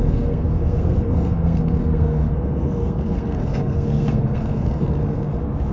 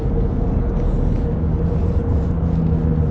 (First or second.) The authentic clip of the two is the second